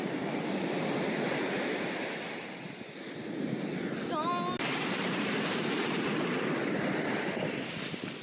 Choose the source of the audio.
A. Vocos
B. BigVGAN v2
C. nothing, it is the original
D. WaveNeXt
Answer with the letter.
C